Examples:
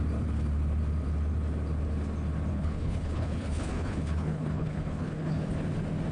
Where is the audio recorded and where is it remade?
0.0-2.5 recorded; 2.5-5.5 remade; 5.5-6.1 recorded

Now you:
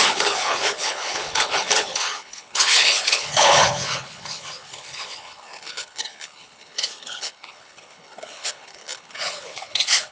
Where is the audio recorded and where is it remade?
0.0-10.1 remade

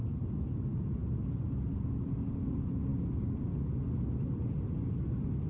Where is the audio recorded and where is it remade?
0.0-5.5 recorded

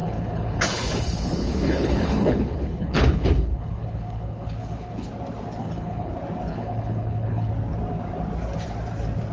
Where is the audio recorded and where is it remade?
0.0-5.1 remade; 5.1-5.6 recorded; 5.6-6.1 remade; 6.1-6.5 recorded; 6.5-7.5 remade; 7.5-9.3 recorded

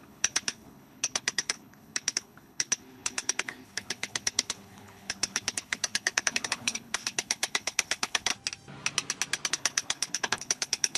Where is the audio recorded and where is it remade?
0.0-8.3 remade; 8.3-9.5 recorded; 9.5-11.0 remade

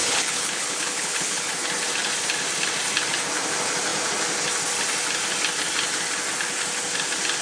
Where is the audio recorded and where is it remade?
0.0-1.5 remade; 1.5-7.4 recorded

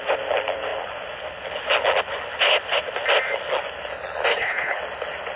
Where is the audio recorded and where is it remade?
0.0-4.3 recorded; 4.3-4.8 remade; 4.8-5.4 recorded

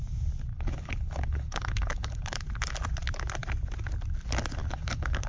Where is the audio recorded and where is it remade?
0.0-0.5 recorded; 0.5-2.4 remade; 2.4-4.6 recorded; 4.6-5.3 remade